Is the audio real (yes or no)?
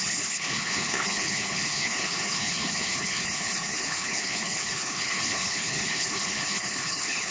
no